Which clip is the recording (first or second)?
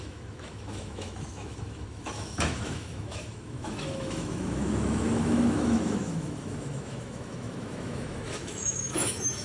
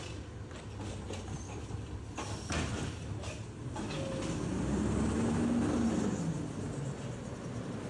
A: second